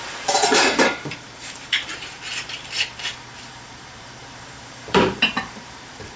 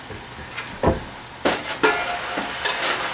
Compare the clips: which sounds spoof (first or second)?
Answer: first